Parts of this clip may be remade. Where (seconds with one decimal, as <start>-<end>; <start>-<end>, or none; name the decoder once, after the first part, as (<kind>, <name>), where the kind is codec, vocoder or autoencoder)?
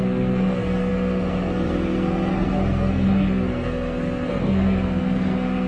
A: 0.0-5.7 (codec, SNAC)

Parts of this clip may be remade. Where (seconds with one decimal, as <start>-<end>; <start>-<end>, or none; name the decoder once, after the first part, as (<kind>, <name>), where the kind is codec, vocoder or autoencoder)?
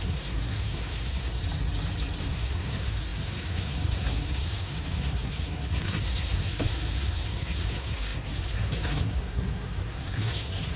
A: 0.0-1.4 (codec, SNAC); 2.2-10.8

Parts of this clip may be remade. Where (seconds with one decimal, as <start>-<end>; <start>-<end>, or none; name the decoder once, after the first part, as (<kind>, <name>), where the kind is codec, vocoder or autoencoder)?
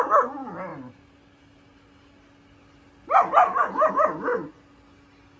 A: none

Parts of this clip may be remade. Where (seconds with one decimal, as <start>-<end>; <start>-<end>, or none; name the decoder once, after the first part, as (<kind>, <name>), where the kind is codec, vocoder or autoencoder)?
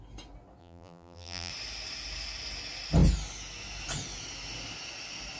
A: 0.6-1.5 (vocoder, BigVGAN v2)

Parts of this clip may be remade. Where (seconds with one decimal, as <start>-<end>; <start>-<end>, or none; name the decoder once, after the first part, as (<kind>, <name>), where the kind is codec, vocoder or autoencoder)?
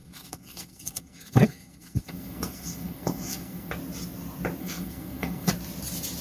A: 0.0-3.7 (codec, SNAC); 4.6-5.5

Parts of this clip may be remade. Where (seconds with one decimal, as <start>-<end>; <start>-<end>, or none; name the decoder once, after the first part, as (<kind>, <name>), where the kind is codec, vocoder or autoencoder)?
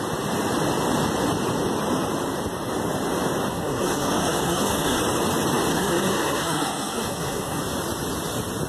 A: 3.5-5.0 (codec, SNAC); 5.7-7.6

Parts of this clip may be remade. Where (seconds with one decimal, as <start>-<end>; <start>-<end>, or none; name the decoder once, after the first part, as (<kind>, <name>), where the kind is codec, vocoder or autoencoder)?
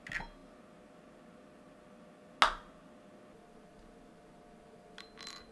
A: none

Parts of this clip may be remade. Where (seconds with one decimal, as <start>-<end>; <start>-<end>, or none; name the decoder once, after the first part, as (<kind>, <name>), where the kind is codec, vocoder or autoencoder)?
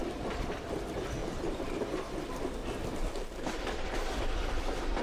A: 1.2-1.9 (vocoder, BigVGAN v2); 2.6-4.5